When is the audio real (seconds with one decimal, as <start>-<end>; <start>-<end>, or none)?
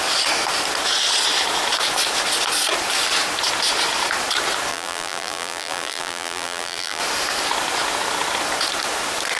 0.0-4.7; 7.0-9.4